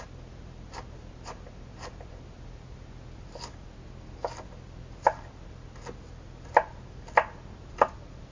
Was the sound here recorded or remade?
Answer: recorded